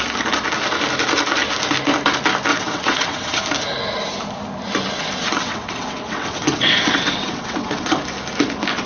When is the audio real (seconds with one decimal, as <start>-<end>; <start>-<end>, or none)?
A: 0.0-2.5; 3.4-5.4; 8.0-8.9

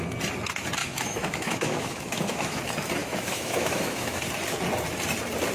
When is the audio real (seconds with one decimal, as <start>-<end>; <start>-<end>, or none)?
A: 0.0-0.8; 2.6-3.0; 4.2-5.5

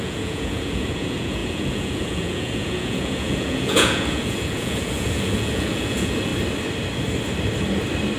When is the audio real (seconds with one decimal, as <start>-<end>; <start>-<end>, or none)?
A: 6.3-8.2

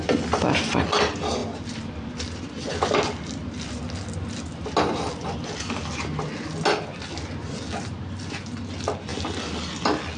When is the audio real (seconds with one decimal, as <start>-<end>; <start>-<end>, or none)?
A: 0.0-10.2

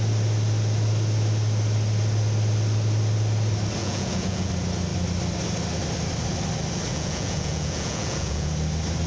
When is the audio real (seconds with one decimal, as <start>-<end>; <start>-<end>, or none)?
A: 0.0-3.8; 4.5-6.9; 8.5-9.1

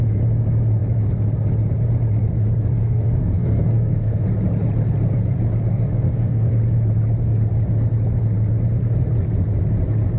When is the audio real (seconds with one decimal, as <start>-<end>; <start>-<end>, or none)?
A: 0.0-2.8; 4.3-5.7; 6.5-10.2

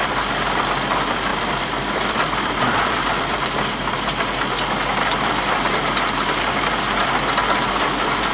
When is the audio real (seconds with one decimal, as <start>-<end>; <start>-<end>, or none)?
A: 0.6-1.3; 3.9-8.3

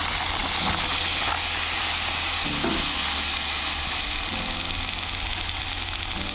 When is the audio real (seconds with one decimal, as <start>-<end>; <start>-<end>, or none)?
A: 0.0-6.3